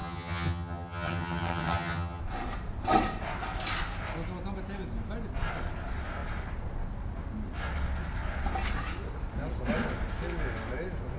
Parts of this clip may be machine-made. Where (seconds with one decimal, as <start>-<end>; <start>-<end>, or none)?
0.0-2.2